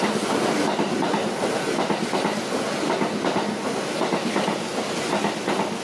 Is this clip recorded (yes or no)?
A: yes